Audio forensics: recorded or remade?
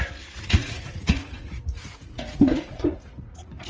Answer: remade